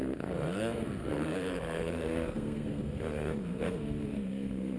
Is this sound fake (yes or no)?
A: yes